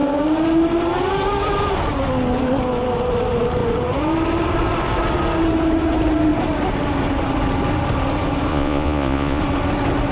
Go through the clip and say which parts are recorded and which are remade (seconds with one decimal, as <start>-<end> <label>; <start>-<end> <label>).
0.0-8.5 recorded; 8.5-9.4 remade; 9.4-10.1 recorded

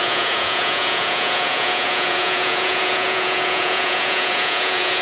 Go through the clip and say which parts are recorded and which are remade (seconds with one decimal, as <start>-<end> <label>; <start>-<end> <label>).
0.0-5.0 remade

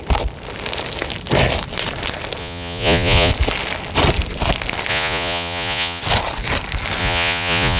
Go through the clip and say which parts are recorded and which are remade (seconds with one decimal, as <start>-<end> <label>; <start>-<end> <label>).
0.0-2.4 recorded; 2.4-3.3 remade; 3.3-4.9 recorded; 4.9-6.0 remade; 6.0-7.0 recorded; 7.0-7.8 remade

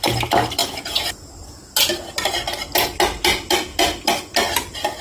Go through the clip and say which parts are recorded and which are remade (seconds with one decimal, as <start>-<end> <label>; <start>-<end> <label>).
0.0-0.6 recorded; 0.6-1.6 remade; 1.6-5.0 recorded